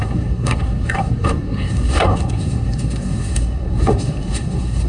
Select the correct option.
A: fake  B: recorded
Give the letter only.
A